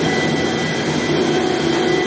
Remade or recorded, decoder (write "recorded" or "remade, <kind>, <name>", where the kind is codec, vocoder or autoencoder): recorded